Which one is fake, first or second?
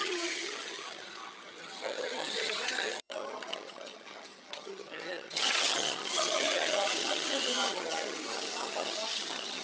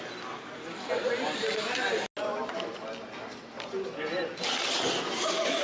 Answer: first